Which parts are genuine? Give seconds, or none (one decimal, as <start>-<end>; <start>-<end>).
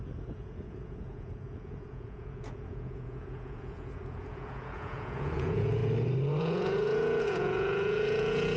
5.8-6.4